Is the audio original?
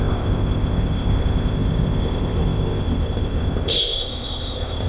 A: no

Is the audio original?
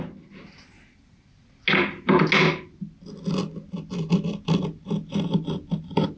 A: yes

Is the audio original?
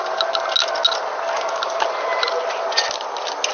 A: yes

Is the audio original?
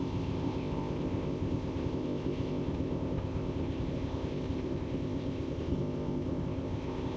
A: no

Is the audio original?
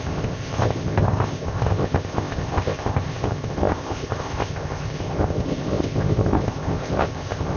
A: no